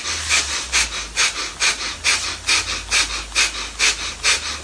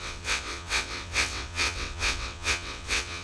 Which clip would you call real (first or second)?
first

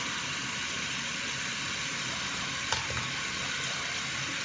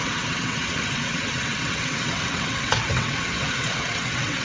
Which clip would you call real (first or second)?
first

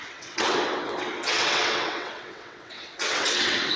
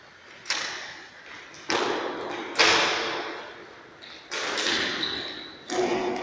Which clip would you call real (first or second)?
second